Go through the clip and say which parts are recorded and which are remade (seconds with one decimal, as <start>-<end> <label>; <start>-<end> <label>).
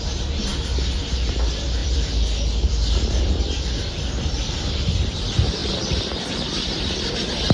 0.0-1.8 recorded; 1.8-4.3 remade; 4.3-5.6 recorded; 5.6-6.8 remade; 6.8-7.5 recorded